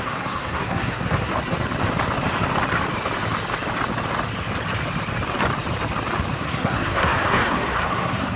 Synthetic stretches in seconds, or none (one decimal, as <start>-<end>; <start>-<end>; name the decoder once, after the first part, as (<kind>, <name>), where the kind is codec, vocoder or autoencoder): 0.0-1.3 (codec, SNAC); 6.3-8.4